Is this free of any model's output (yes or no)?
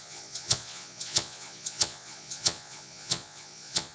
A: no